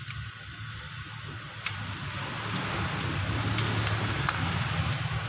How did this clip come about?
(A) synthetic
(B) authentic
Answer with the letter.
B